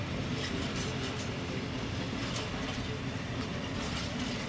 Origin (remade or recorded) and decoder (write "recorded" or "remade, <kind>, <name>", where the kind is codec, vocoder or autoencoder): recorded